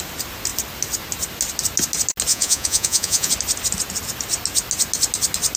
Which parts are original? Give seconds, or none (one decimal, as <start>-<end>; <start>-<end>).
0.0-2.3; 3.3-5.6